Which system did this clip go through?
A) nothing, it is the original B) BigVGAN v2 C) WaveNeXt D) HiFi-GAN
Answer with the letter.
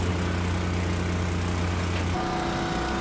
A